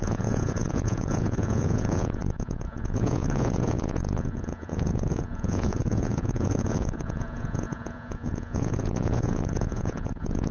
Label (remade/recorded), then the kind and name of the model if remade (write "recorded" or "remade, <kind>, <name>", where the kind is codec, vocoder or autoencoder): remade, vocoder, Vocos